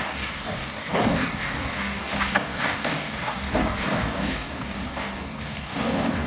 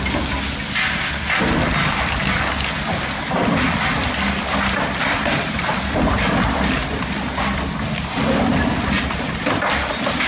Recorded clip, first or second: second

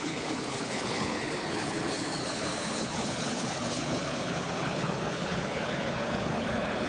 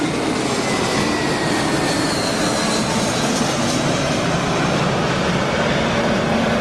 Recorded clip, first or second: second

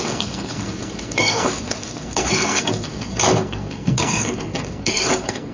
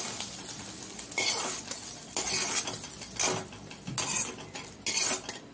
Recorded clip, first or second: second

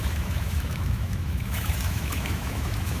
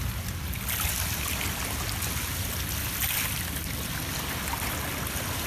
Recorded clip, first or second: second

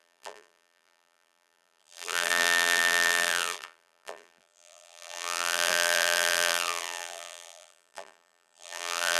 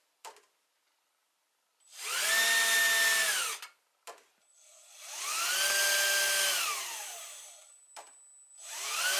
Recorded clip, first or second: second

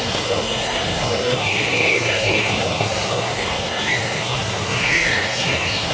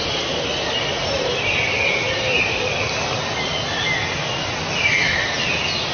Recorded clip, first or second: second